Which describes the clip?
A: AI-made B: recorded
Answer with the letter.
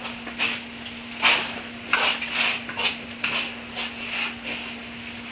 B